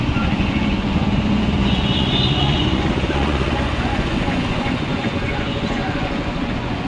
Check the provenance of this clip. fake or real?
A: fake